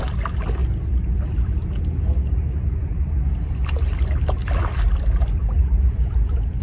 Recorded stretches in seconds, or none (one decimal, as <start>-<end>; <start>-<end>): 0.0-4.4